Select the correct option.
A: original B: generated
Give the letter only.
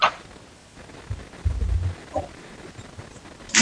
A